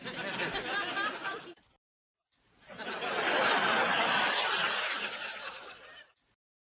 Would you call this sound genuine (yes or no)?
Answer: yes